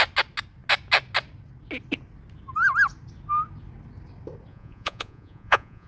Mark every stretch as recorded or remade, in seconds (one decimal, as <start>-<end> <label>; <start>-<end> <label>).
0.0-4.5 recorded; 4.5-5.9 remade